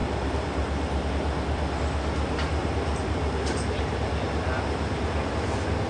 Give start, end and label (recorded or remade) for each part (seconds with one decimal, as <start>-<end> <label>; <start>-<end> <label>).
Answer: 0.0-1.1 remade; 1.1-2.6 recorded; 2.6-3.8 remade; 3.8-5.9 recorded